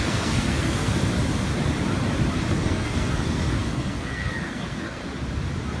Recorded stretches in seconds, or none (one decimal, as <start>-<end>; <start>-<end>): 1.0-2.5; 5.0-5.8